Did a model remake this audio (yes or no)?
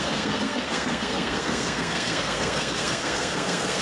yes